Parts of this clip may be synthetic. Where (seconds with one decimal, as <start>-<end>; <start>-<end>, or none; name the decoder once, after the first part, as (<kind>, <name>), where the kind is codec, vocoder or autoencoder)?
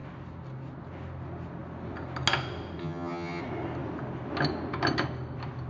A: 2.8-3.4 (vocoder, HiFi-GAN)